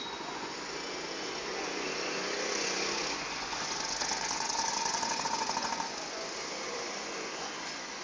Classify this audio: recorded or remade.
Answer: remade